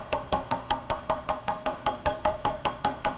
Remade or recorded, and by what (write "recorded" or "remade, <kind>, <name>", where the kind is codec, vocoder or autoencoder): remade, codec, SNAC